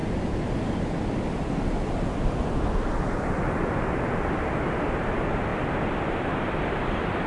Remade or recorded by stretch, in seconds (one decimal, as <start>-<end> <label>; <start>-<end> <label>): 0.0-7.3 recorded